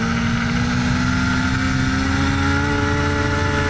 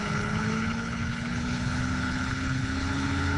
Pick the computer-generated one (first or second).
second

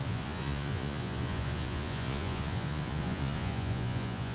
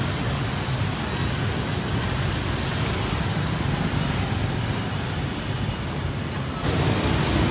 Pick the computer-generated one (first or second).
first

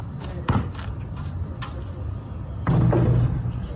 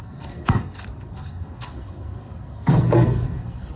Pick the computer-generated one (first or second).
second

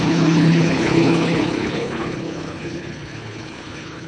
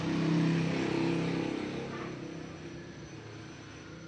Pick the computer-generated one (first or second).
first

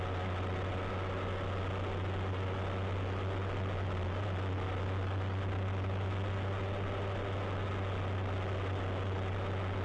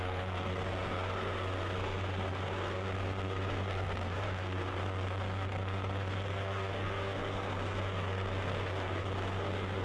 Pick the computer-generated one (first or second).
second